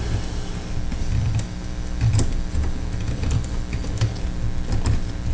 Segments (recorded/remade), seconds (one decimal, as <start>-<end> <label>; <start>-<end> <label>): 0.0-1.0 recorded; 1.0-4.2 remade; 4.2-5.3 recorded

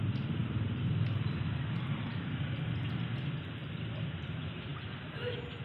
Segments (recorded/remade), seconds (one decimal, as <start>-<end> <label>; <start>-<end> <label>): 0.0-4.7 remade; 4.7-5.6 recorded

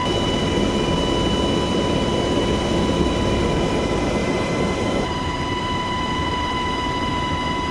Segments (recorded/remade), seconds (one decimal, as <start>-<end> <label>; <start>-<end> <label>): 0.0-4.2 recorded; 4.2-7.1 remade; 7.1-7.7 recorded

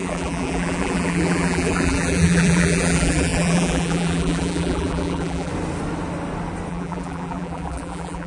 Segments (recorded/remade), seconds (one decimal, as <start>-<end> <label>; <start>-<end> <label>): 0.0-5.5 remade; 5.5-6.7 recorded; 6.7-8.3 remade

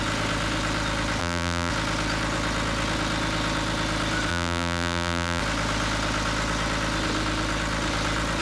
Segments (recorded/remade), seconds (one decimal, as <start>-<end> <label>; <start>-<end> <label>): 0.0-1.2 recorded; 1.2-1.7 remade; 1.7-4.3 recorded; 4.3-5.4 remade; 5.4-8.4 recorded

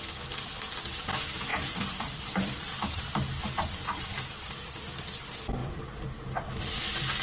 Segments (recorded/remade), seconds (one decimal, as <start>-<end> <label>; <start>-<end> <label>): 0.0-1.5 recorded; 1.5-3.0 remade; 3.0-7.2 recorded